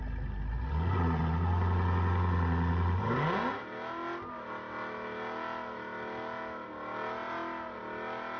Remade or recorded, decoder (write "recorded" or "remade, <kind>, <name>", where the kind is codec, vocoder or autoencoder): recorded